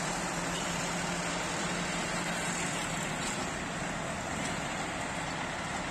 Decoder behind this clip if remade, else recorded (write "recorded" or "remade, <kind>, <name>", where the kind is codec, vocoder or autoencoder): recorded